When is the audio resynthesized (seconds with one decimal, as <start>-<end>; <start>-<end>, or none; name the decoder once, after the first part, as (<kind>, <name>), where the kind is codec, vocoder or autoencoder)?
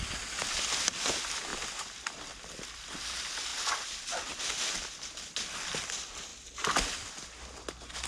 none